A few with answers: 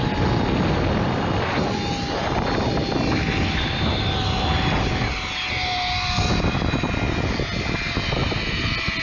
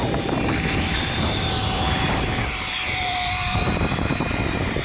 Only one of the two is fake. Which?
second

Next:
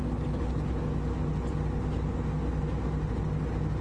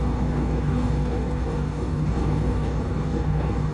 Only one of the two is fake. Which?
second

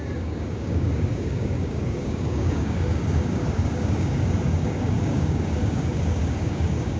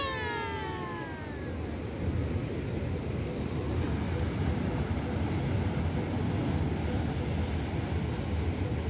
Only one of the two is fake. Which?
first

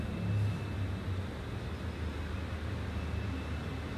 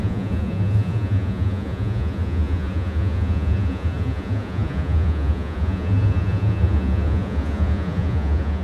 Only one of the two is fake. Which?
second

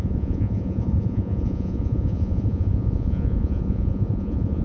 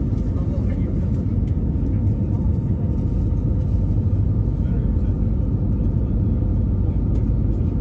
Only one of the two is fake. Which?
first